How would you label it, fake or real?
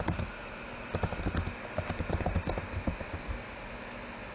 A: real